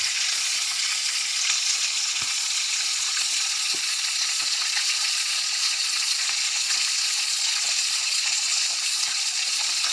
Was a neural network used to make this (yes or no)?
yes